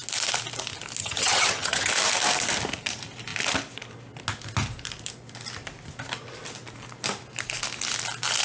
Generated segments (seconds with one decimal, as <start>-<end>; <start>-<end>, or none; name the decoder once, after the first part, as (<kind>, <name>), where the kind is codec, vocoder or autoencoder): 1.0-1.9 (vocoder, HiFi-GAN)